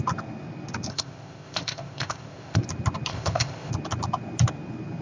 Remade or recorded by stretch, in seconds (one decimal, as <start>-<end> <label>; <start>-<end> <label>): 0.0-0.9 recorded; 0.9-2.6 remade; 2.6-3.1 recorded; 3.1-3.7 remade; 3.7-5.0 recorded